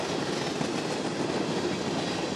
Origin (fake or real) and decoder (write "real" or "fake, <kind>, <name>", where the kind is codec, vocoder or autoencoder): real